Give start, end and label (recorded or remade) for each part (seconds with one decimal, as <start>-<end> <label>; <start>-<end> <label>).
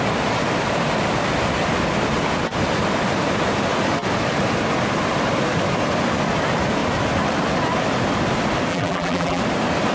0.0-8.7 recorded; 8.7-9.4 remade; 9.4-9.9 recorded